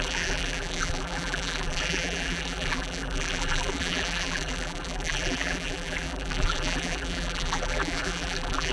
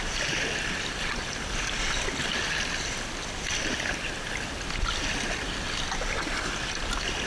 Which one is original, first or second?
second